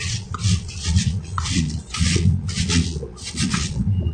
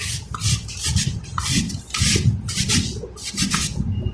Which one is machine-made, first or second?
first